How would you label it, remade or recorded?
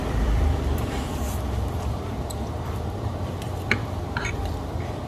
remade